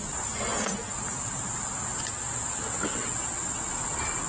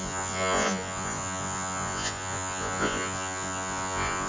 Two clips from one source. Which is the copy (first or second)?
second